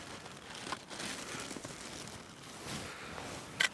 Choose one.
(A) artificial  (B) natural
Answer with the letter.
B